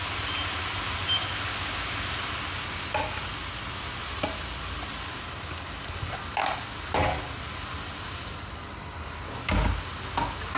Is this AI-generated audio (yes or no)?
no